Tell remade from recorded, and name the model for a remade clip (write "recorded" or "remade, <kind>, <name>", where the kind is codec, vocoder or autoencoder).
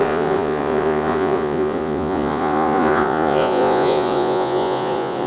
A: remade, vocoder, Vocos